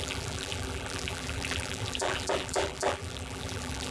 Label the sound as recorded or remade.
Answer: remade